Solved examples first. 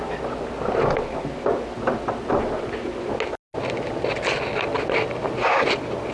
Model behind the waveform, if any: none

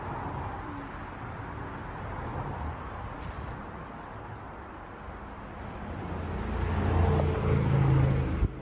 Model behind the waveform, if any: none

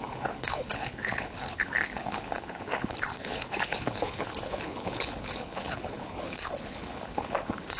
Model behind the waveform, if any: codec, HILCodec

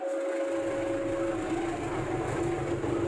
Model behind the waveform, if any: none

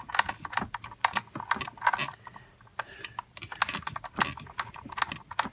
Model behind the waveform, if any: none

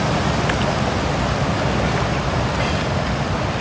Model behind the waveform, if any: none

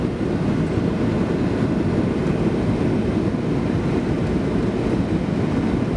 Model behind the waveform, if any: vocoder, BigVGAN v2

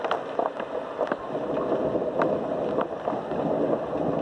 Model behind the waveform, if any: none